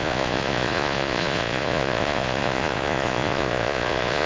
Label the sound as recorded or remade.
remade